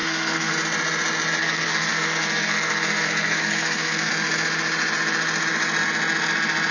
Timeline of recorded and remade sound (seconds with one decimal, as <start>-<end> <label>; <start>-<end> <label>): 0.0-0.5 remade; 0.5-1.4 recorded; 1.4-4.1 remade; 4.1-6.7 recorded